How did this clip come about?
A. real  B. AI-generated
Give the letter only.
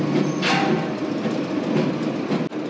A